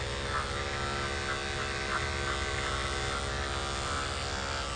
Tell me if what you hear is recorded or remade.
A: recorded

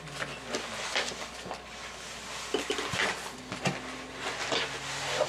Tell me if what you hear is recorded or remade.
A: recorded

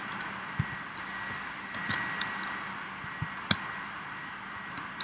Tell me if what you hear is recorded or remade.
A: recorded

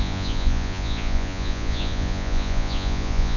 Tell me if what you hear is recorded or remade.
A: remade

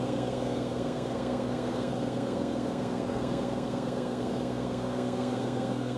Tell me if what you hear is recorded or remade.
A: remade